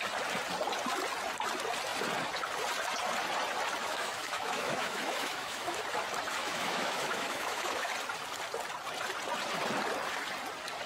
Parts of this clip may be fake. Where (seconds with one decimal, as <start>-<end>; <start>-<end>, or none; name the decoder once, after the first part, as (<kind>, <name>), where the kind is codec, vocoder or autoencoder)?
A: 3.8-5.8 (autoencoder, DAC-VAE); 6.4-7.9